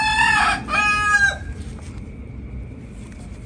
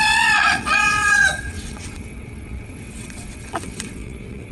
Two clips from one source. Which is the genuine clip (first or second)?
first